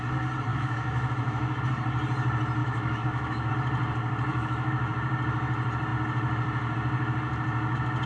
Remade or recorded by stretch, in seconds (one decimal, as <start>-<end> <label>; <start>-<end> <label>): 0.0-0.5 recorded; 0.5-1.6 remade; 1.6-2.6 recorded; 2.6-3.5 remade; 3.5-4.3 recorded; 4.3-4.9 remade; 4.9-8.1 recorded